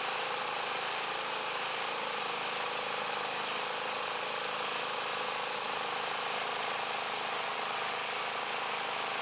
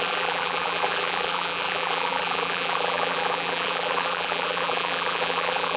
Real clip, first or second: first